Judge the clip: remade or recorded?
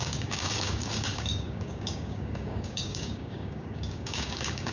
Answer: remade